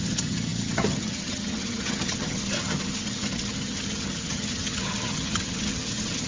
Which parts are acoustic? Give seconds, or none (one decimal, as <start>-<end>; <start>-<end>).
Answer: none

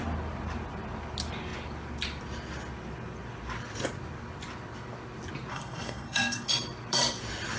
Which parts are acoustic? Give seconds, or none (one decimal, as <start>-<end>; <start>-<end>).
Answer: 0.0-5.5; 6.5-7.6

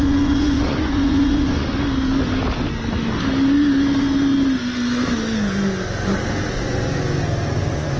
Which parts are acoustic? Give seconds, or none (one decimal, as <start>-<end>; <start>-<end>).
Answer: 1.7-6.5

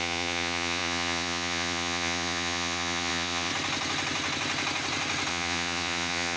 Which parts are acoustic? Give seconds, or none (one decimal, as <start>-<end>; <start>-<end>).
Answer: 3.5-5.3

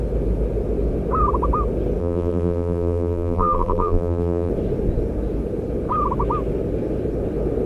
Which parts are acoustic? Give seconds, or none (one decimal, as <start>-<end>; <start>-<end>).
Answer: 0.0-2.0; 4.5-7.7

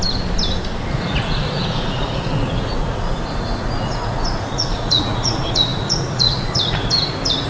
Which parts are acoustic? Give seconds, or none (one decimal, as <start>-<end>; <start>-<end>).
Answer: 0.0-0.9

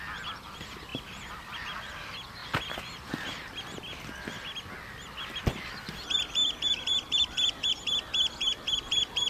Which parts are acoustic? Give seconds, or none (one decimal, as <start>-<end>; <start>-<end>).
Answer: 0.0-0.9; 1.5-6.4; 7.7-9.3